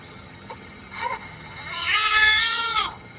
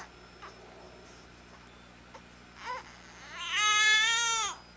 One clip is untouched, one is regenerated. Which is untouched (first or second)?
second